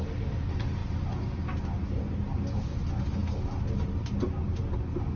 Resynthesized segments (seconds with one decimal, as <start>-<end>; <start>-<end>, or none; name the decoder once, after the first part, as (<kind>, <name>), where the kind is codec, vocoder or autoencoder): none